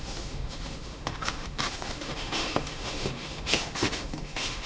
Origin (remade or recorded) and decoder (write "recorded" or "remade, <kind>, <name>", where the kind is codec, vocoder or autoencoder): remade, autoencoder, DAC-VAE